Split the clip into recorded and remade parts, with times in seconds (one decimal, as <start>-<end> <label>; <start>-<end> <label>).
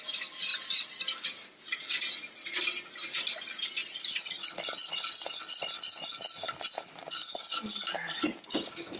0.0-9.0 recorded